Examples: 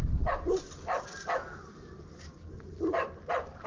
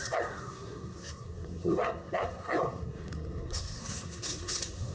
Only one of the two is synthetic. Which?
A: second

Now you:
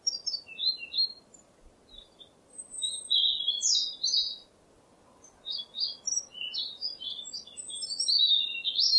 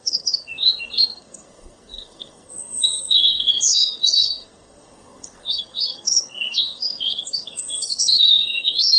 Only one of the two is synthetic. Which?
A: second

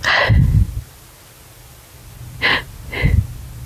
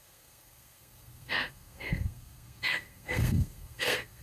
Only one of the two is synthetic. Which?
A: second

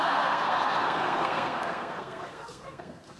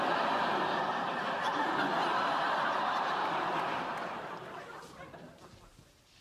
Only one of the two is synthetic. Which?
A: first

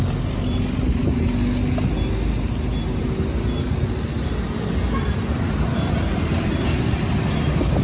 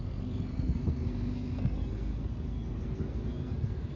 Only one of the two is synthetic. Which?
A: second